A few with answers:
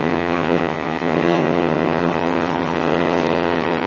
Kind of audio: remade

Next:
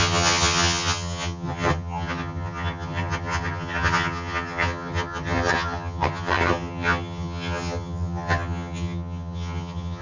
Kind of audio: remade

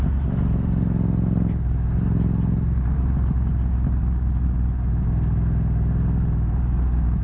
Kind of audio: recorded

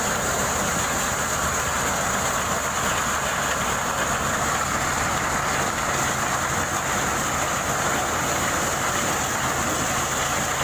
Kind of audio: recorded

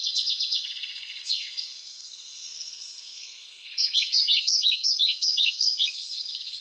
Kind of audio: remade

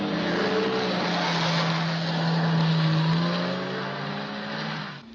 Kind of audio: recorded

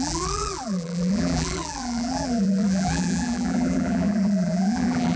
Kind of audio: remade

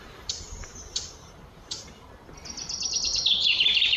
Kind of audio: remade